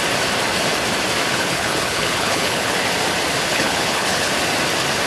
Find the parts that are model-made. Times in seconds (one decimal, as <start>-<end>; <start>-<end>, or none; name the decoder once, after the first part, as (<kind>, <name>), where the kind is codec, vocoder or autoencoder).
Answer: 1.3-2.8 (codec, HILCodec); 3.5-4.3